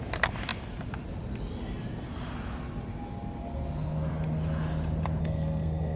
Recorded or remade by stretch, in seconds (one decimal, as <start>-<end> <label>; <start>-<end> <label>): 0.0-5.2 recorded; 5.2-6.0 remade